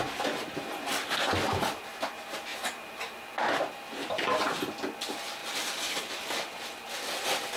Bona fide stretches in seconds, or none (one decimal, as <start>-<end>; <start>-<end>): 0.0-2.5; 3.4-4.0; 4.6-5.4; 6.0-7.6